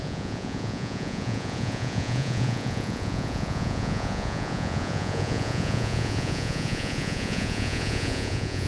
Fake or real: fake